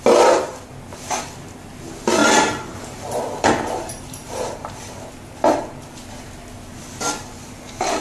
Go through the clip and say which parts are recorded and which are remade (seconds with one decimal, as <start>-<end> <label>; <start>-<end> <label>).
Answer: 0.0-2.2 recorded; 2.2-4.9 remade; 4.9-8.0 recorded